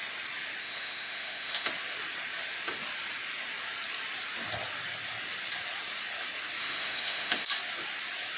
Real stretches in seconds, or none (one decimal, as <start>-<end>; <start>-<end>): 0.0-0.6; 1.7-6.6; 7.5-8.4